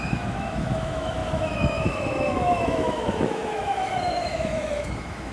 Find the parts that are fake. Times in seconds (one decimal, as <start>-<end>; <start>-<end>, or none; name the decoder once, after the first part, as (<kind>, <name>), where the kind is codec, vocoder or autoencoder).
0.0-5.3 (autoencoder, DAC-VAE)